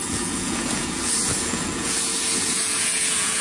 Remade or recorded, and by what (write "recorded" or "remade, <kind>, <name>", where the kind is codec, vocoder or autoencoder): remade, vocoder, Vocos